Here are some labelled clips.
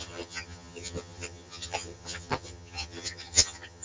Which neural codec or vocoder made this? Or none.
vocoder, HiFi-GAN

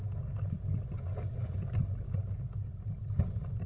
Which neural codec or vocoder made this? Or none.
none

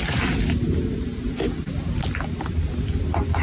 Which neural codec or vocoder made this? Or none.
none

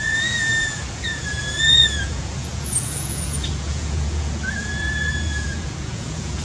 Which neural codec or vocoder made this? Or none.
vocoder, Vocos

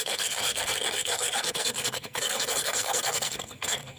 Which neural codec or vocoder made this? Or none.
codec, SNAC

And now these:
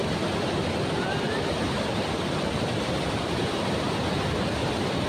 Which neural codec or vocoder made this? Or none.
vocoder, BigVGAN v2